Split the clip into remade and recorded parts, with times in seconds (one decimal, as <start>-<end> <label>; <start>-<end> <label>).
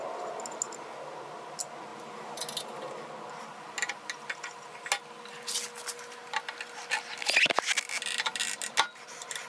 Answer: 0.0-9.5 recorded